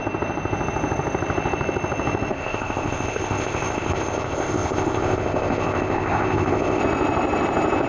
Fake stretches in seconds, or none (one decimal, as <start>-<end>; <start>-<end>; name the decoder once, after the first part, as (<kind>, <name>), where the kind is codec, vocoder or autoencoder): 2.3-6.8 (codec, ZipCodec)